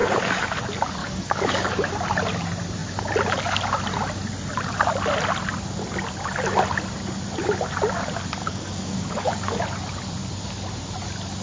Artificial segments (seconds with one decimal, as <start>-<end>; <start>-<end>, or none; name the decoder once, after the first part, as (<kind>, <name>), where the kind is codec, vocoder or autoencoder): 0.0-0.6 (codec, DAC); 1.0-1.9; 8.4-9.6